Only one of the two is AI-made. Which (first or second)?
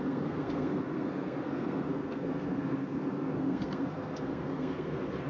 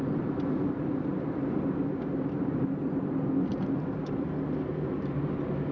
first